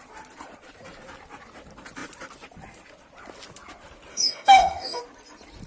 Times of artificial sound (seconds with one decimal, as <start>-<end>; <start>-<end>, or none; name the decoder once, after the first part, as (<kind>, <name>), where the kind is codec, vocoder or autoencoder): 4.1-5.0 (codec, DAC)